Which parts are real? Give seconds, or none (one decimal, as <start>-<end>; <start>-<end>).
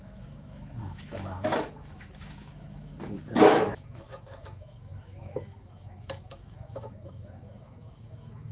2.9-3.7